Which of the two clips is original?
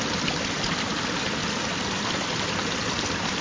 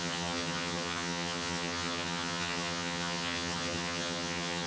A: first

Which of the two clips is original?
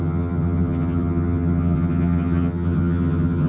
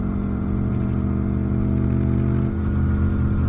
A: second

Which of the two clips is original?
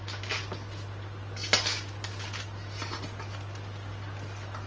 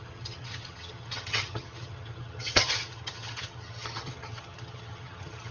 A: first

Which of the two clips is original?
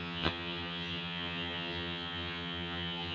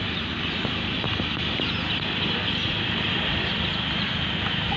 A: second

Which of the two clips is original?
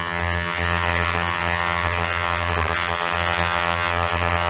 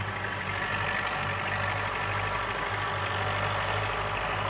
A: second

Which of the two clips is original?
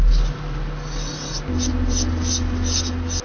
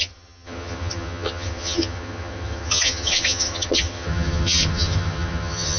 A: first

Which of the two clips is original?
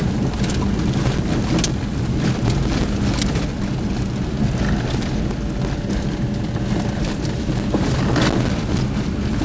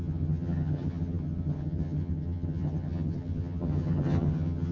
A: first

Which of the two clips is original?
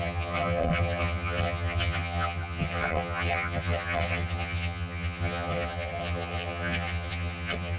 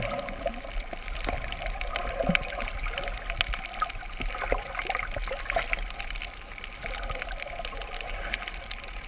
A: second